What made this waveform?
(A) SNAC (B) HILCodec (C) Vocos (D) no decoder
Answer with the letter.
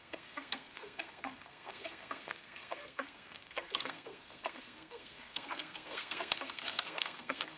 A